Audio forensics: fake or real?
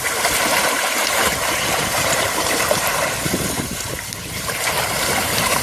fake